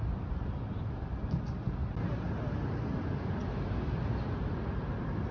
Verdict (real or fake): real